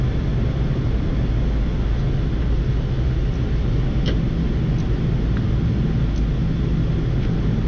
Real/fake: real